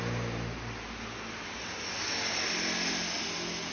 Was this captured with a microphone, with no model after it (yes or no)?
yes